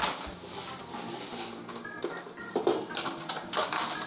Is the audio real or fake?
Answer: real